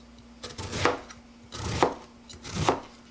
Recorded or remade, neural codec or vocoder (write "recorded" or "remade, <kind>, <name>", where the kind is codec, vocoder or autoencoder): recorded